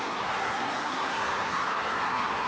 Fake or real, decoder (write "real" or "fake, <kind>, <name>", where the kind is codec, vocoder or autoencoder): fake, codec, SNAC